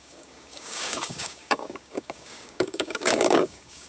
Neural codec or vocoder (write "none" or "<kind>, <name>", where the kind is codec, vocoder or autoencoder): codec, DAC